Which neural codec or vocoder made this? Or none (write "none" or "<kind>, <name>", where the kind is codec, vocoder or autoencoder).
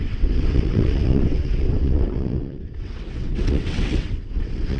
vocoder, WaveNeXt